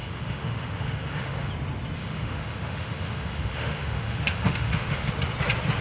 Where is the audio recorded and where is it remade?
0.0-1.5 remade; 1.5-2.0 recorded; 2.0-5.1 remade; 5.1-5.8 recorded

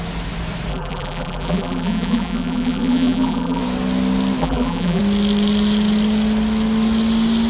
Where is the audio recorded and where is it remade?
0.0-0.7 recorded; 0.7-3.6 remade; 3.6-4.4 recorded; 4.4-5.0 remade; 5.0-7.5 recorded

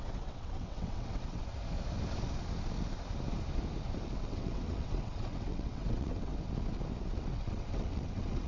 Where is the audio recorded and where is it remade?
0.0-1.4 remade; 1.4-4.2 recorded; 4.2-6.3 remade; 6.3-7.2 recorded; 7.2-8.5 remade

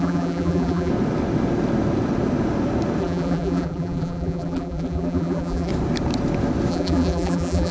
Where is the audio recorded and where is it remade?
0.0-0.9 remade; 0.9-3.0 recorded; 3.0-5.7 remade; 5.7-6.7 recorded; 6.7-7.7 remade

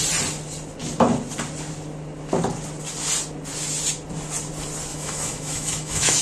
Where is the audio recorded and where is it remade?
0.0-4.9 recorded; 4.9-6.2 remade

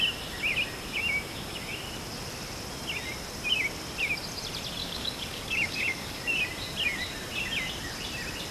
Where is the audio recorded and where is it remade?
0.0-4.8 recorded; 4.8-6.4 remade; 6.4-8.5 recorded

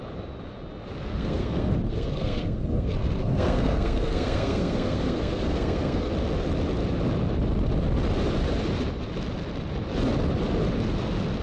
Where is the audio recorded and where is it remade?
0.0-1.1 recorded; 1.1-6.1 remade; 6.1-11.4 recorded